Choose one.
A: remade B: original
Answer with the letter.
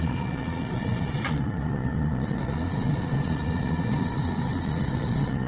A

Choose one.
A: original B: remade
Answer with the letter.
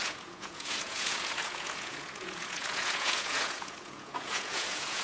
B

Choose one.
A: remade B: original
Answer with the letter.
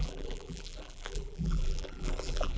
A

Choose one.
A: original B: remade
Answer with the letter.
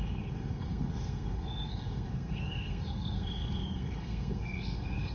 B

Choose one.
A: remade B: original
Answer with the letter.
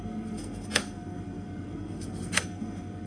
A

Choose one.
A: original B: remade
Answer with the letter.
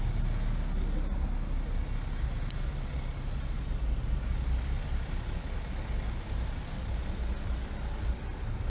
A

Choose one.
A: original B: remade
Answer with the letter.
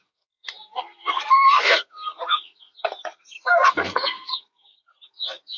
B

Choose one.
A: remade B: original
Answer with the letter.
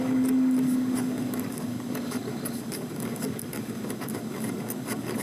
A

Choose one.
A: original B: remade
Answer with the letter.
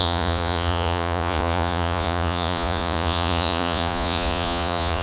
B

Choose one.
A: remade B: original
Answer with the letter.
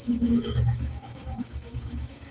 A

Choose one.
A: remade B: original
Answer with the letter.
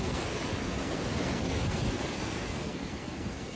A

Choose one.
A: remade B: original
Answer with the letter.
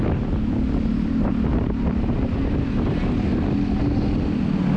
B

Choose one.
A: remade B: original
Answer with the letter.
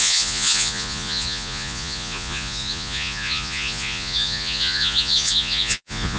A